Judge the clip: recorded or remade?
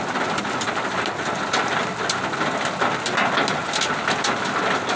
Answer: recorded